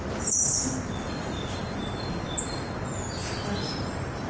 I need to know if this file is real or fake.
real